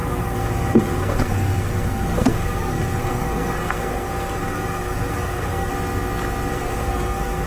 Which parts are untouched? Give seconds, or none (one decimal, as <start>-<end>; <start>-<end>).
5.7-6.5